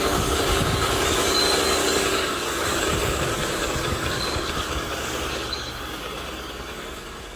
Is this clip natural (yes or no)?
no